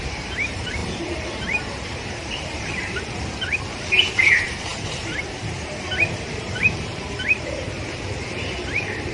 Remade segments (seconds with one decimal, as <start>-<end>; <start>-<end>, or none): 0.0-9.1

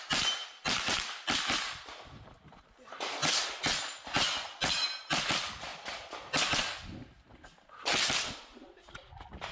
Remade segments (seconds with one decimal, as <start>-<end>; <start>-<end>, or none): 0.4-2.4

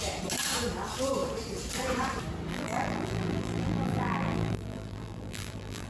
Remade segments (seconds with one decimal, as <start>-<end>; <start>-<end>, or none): 2.5-5.9

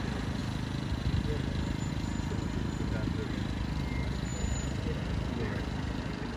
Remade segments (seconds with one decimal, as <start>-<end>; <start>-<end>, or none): none

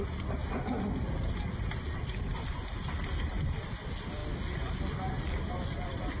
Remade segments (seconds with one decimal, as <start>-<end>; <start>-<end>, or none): none

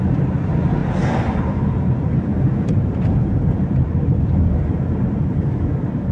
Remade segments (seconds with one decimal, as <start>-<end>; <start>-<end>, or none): none

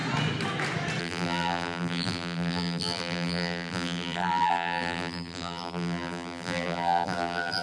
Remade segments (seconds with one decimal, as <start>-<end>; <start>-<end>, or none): 1.0-7.6